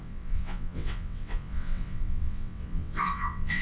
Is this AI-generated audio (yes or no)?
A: yes